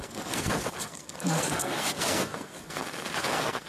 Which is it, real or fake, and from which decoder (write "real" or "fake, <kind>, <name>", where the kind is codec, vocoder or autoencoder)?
fake, codec, SNAC